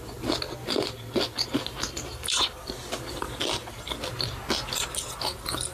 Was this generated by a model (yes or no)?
no